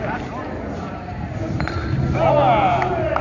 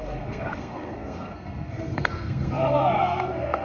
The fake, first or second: second